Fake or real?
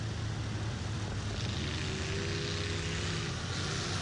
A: real